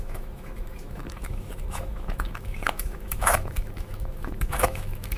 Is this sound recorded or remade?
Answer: remade